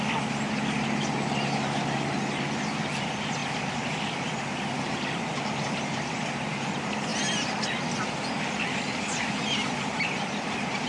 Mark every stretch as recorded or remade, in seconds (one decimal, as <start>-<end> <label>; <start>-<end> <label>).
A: 0.0-10.9 recorded